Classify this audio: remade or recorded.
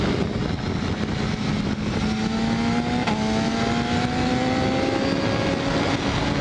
recorded